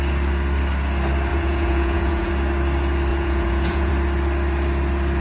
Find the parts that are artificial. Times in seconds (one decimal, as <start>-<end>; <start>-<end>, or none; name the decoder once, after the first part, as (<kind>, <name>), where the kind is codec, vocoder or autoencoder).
1.3-2.3 (vocoder, Vocos); 3.1-3.9